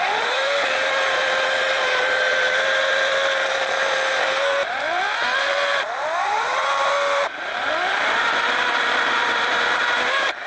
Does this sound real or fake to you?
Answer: fake